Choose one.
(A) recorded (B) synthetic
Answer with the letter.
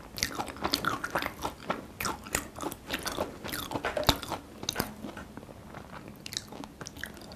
A